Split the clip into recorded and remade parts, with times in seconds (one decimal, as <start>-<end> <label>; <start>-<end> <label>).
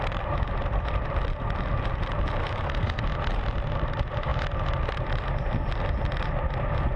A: 0.0-2.4 recorded; 2.4-3.0 remade; 3.0-7.0 recorded